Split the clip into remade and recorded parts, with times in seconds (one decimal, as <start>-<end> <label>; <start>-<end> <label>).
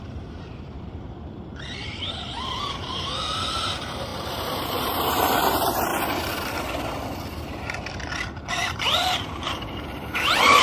0.0-5.9 remade; 5.9-8.5 recorded; 8.5-10.6 remade